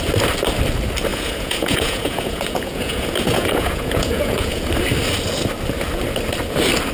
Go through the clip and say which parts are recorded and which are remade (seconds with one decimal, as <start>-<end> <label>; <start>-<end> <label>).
0.0-1.1 recorded; 1.1-4.6 remade; 4.6-6.9 recorded